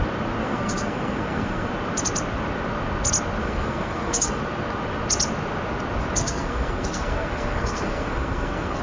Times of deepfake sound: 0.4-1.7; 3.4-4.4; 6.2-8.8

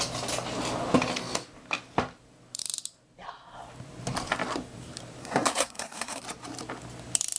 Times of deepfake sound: 5.2-6.2